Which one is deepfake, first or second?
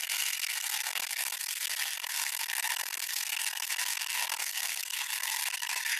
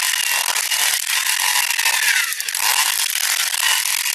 first